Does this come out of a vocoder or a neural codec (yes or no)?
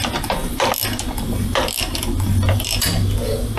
no